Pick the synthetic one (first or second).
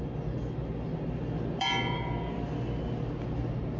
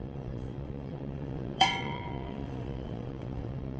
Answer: second